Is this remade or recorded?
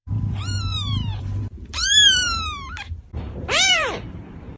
remade